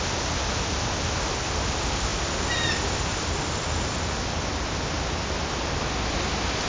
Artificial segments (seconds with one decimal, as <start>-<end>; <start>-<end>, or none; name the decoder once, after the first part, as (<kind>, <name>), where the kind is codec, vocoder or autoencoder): none